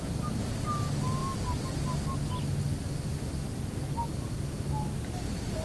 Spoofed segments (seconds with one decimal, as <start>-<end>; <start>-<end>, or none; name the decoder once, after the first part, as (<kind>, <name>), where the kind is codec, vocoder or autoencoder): none